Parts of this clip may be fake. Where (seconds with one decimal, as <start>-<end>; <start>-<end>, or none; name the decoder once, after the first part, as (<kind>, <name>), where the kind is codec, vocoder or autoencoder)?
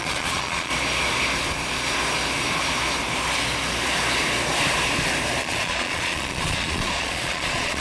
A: 0.0-0.7 (vocoder, Vocos); 5.4-7.8